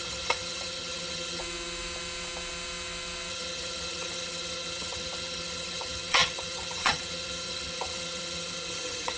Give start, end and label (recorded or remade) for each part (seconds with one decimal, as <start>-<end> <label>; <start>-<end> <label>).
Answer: 0.0-1.4 remade; 1.4-3.3 recorded; 3.3-9.2 remade